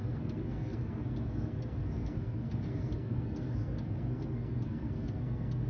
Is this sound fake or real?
fake